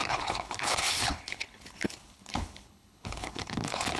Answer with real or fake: fake